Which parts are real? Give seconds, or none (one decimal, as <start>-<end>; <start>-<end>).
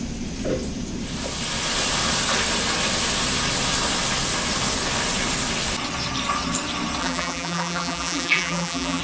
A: 0.0-7.0